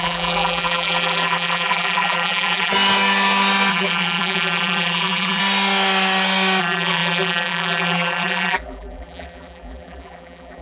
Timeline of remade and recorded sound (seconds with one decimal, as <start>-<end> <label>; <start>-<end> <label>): 0.0-2.7 remade; 2.7-3.7 recorded; 3.7-5.4 remade; 5.4-6.6 recorded; 6.6-10.6 remade